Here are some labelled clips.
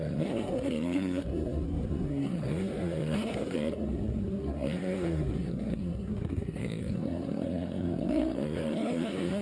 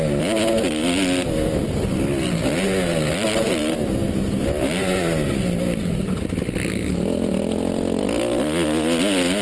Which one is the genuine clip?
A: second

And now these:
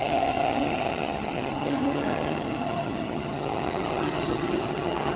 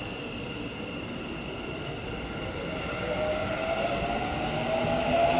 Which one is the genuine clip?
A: second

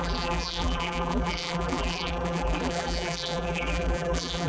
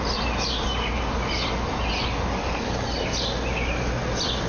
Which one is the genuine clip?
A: second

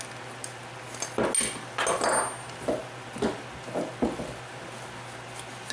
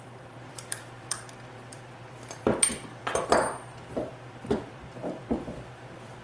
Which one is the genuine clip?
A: first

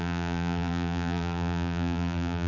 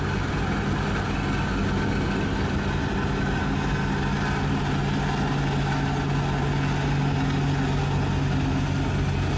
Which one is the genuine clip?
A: second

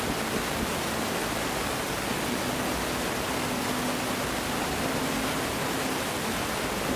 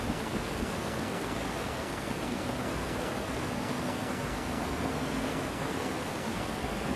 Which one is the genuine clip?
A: first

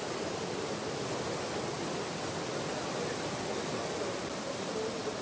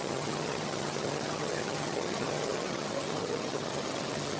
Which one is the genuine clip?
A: first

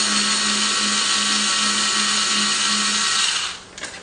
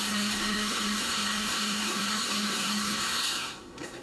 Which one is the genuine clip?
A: first